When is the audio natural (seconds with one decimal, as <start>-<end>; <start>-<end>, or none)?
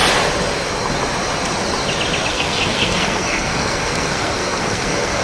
0.0-2.3